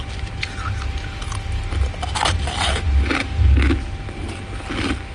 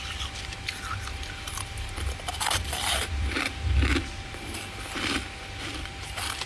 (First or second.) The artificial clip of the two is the second